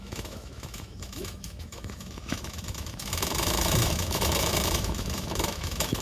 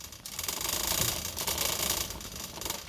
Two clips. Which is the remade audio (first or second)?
first